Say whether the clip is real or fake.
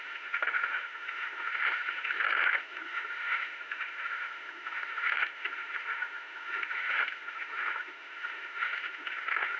fake